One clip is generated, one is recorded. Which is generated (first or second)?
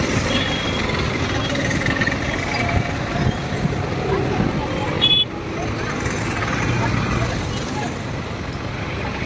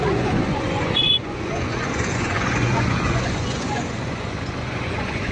second